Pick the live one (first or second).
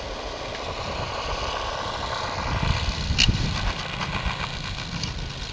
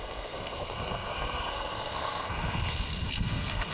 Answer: first